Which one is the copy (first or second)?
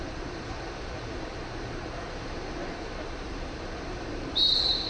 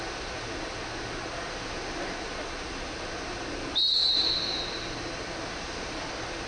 first